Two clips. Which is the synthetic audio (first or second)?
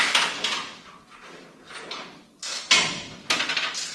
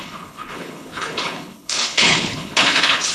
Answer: second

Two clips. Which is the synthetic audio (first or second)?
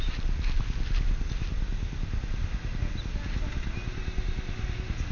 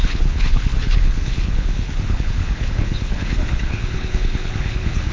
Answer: second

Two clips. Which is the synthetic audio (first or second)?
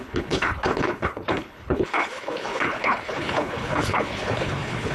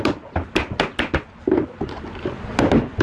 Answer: first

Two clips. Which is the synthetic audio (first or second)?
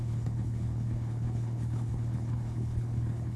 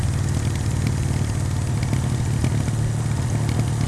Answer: first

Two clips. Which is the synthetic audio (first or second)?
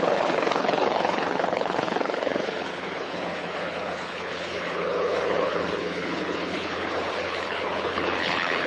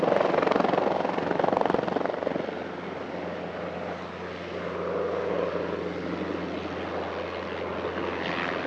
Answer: first